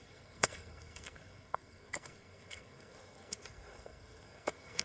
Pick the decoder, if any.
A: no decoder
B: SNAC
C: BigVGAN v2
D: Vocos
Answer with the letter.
B